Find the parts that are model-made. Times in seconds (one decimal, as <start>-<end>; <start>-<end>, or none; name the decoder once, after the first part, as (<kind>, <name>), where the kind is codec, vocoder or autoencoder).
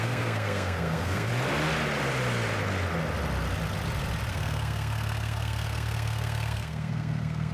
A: 0.0-1.3 (codec, SNAC); 4.3-7.5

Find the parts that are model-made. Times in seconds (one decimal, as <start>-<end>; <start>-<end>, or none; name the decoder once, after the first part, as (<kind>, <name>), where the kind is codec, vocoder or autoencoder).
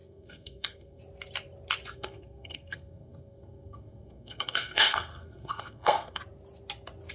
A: 0.0-1.0 (codec, SNAC); 1.9-6.2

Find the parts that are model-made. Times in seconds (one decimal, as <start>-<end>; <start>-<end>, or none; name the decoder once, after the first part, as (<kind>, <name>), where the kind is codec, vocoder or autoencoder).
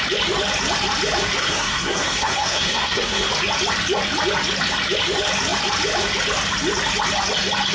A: 1.4-3.3 (codec, SNAC)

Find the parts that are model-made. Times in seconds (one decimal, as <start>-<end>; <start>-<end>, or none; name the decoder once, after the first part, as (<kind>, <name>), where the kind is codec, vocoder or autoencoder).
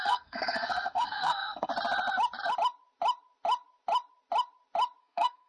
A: 0.0-1.7 (codec, SNAC); 5.0-5.5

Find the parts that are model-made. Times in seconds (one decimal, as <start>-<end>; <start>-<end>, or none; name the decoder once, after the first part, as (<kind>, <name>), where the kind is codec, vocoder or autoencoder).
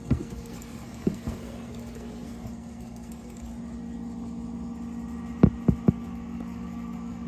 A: 0.0-3.5 (codec, SNAC); 5.9-7.3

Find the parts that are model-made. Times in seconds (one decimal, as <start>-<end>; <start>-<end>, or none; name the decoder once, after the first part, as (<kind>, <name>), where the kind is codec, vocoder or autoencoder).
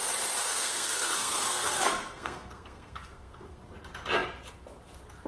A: 0.4-3.6 (codec, SNAC)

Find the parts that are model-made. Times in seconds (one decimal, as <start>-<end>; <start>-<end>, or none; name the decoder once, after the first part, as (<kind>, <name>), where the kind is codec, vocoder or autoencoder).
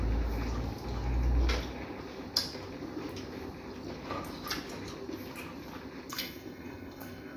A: 6.1-7.4 (codec, SNAC)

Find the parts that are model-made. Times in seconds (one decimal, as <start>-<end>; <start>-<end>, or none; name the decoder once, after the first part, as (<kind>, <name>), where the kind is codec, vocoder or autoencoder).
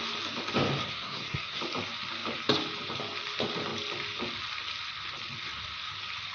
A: 0.8-1.6 (codec, SNAC)